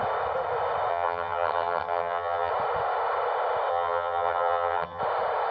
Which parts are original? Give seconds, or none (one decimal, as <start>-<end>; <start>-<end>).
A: 0.0-0.9; 2.5-3.7; 5.0-5.5